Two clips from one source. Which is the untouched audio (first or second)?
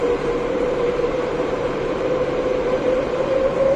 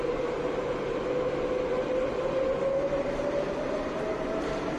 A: second